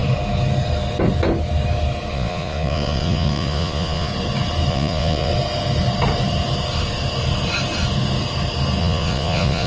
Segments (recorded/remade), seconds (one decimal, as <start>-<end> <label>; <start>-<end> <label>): 0.0-2.1 recorded; 2.1-4.1 remade; 4.1-4.7 recorded; 4.7-5.3 remade; 5.3-8.8 recorded; 8.8-9.7 remade